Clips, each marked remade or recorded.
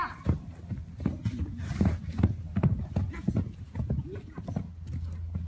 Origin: recorded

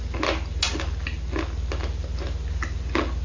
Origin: recorded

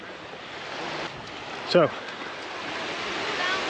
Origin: recorded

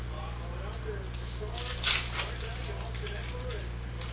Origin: recorded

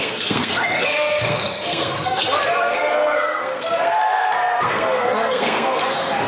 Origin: remade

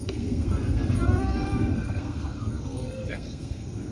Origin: remade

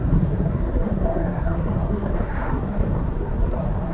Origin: remade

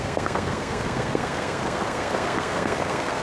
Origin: remade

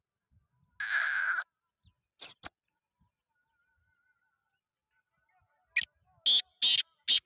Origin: recorded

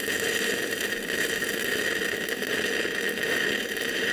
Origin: recorded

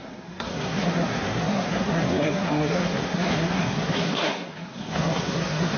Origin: remade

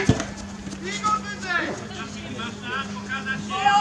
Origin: recorded